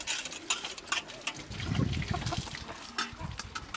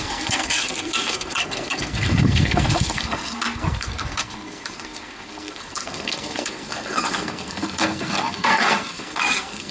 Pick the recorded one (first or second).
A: first